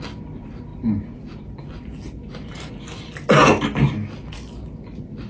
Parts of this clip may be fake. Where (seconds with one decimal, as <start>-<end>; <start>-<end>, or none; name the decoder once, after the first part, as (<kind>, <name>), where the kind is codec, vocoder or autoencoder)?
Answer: none